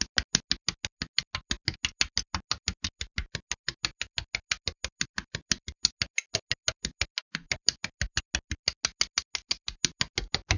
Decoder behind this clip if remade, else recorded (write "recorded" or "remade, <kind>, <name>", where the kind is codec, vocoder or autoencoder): recorded